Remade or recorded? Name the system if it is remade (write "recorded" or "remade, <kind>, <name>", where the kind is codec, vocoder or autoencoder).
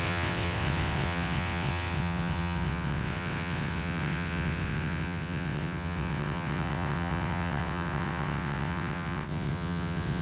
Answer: remade, vocoder, WaveNeXt